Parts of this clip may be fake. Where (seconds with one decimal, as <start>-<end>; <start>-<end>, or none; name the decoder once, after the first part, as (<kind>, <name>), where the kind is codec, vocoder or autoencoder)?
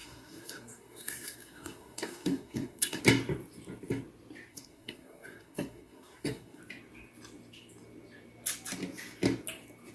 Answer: 0.0-3.0 (codec, SNAC); 4.5-6.6